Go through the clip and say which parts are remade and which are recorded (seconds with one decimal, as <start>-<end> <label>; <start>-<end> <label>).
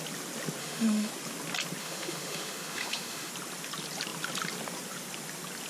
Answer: 0.0-0.6 recorded; 0.6-1.1 remade; 1.1-1.8 recorded; 1.8-3.3 remade; 3.3-5.7 recorded